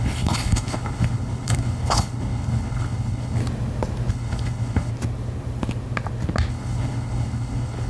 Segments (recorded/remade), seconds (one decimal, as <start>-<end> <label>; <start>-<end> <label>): 0.0-3.4 remade; 3.4-4.1 recorded; 4.1-4.9 remade; 4.9-6.5 recorded; 6.5-7.9 remade